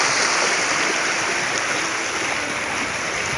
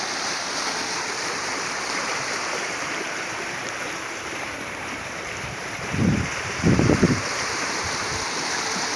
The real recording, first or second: first